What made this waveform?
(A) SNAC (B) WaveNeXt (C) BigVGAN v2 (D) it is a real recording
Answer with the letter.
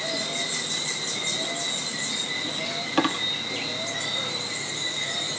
D